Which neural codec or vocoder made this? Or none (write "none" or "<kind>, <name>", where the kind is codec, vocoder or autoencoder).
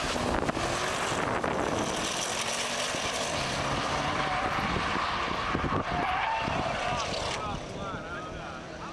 none